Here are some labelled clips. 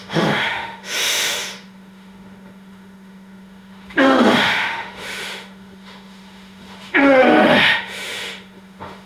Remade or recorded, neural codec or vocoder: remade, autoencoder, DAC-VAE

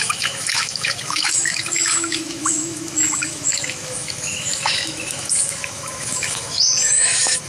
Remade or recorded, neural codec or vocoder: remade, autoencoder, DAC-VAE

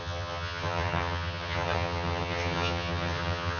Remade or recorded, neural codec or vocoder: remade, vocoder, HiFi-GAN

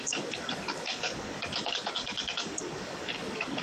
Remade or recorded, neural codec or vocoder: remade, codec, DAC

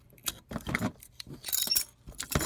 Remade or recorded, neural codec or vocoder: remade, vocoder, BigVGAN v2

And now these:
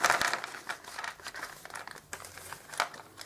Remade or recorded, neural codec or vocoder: recorded